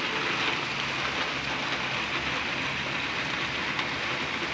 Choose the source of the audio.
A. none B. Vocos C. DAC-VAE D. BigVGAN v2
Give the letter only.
A